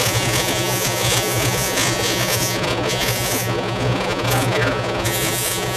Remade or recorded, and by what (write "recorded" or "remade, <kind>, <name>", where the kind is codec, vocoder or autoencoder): remade, vocoder, Vocos